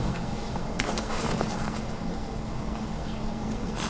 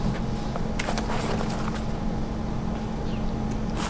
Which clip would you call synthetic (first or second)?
first